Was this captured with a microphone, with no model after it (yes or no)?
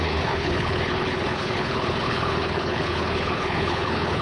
no